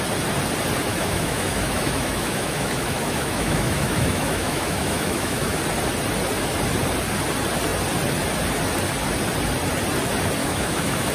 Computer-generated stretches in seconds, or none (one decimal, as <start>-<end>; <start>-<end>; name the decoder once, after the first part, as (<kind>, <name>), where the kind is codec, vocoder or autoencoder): 0.9-5.6 (autoencoder, DAC-VAE); 10.4-11.1